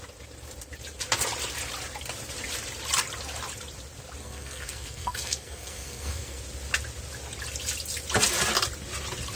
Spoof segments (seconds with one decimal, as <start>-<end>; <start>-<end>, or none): 4.2-6.4